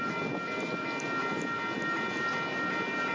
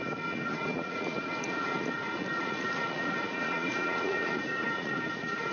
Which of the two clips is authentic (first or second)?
first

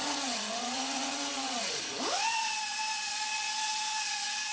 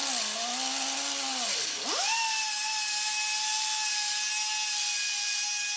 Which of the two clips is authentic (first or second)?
second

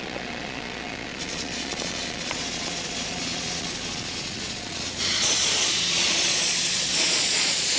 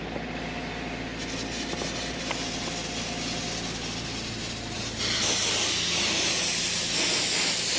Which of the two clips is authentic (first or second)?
second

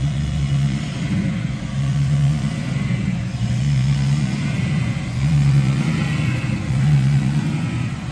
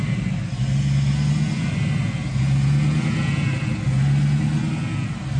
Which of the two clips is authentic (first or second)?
second